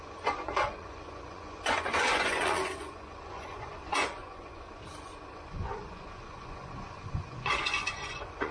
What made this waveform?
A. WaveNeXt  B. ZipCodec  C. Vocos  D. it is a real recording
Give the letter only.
C